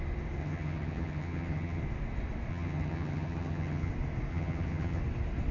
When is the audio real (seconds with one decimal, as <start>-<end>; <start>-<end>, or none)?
0.0-0.4; 1.8-2.5; 3.9-4.3; 5.0-5.5